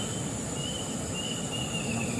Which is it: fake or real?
real